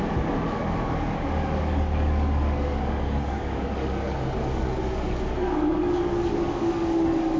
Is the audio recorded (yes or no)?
no